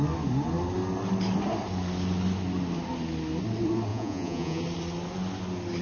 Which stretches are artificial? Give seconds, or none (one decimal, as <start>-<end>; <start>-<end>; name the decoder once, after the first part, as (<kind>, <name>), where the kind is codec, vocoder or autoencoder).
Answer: 3.9-4.6 (vocoder, Vocos)